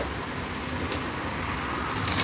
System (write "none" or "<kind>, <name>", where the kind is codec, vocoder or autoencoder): none